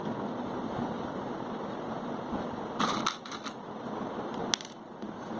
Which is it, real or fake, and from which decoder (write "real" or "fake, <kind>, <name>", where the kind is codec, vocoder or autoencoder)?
real